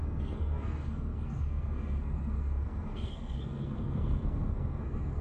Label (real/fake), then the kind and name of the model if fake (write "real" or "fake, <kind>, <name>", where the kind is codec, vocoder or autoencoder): fake, codec, SNAC